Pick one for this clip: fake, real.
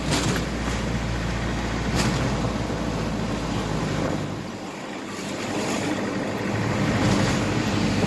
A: real